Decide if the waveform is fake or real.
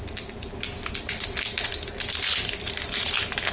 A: real